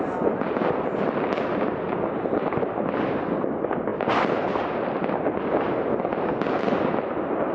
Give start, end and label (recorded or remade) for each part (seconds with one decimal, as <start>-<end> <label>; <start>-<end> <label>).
0.0-7.5 recorded